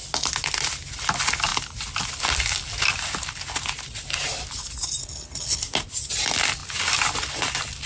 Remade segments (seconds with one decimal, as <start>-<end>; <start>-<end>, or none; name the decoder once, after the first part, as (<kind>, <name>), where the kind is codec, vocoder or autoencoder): 5.0-5.6 (codec, HILCodec)